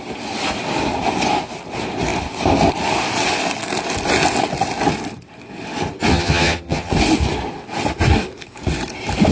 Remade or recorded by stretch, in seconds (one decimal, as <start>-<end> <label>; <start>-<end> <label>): 0.0-6.1 recorded; 6.1-6.9 remade; 6.9-9.3 recorded